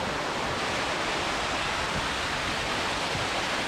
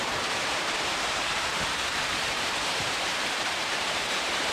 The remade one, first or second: second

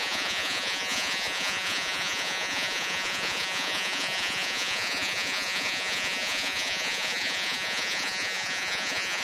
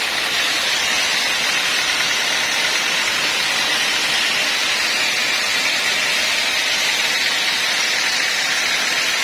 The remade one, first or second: first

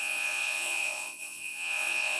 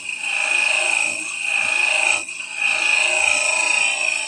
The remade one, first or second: first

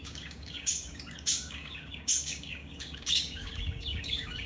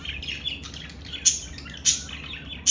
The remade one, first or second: first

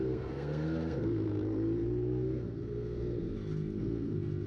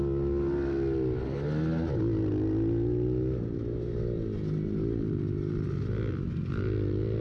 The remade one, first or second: first